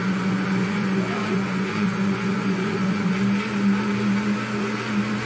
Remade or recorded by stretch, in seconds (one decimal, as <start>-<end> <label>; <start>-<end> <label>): 0.0-3.2 remade; 3.2-5.3 recorded